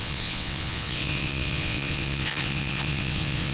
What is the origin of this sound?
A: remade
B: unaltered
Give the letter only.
A